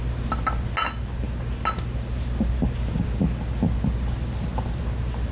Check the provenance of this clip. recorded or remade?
recorded